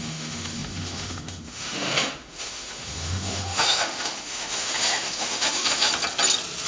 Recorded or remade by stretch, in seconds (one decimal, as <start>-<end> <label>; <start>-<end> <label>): 0.0-5.9 remade; 5.9-6.7 recorded